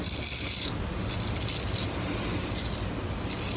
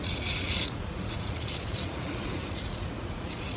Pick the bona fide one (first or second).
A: first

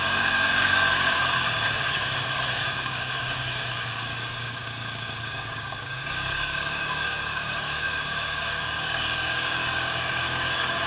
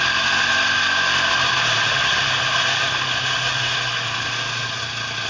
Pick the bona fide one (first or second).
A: second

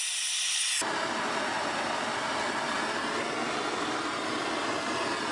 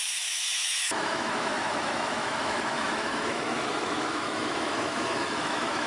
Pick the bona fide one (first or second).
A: first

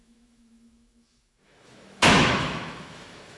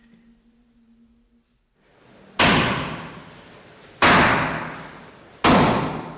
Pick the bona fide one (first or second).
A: second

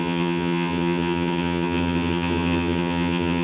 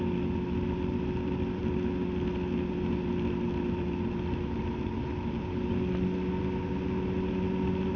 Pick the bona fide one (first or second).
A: second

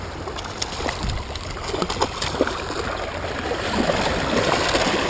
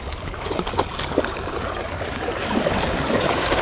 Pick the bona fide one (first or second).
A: first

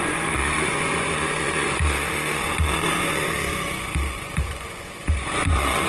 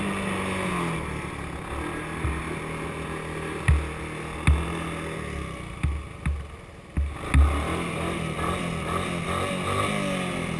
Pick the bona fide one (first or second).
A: second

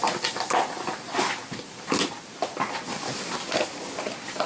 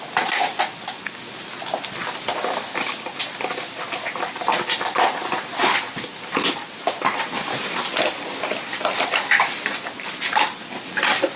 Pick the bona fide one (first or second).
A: first